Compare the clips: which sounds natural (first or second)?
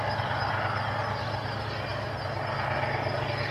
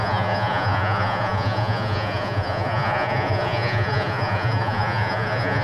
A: first